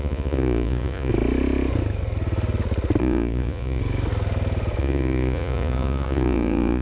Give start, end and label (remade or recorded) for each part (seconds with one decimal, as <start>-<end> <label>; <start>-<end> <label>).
0.0-1.1 remade; 1.1-3.0 recorded; 3.0-3.8 remade; 3.8-4.8 recorded; 4.8-6.8 remade